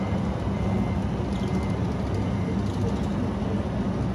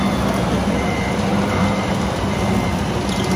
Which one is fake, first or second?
second